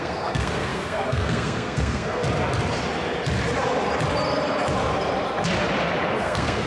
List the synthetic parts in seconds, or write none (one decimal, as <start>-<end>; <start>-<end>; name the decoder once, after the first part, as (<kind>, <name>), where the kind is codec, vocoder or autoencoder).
0.0-2.2 (codec, SNAC); 6.2-6.7